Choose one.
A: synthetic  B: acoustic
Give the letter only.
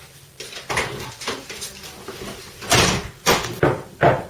A